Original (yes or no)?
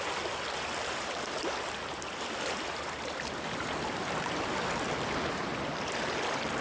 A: yes